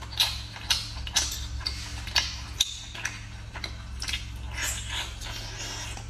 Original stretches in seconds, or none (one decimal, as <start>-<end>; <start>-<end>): 0.0-6.1